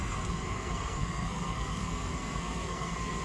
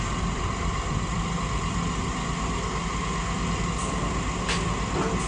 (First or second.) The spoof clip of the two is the first